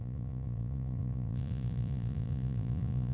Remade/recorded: remade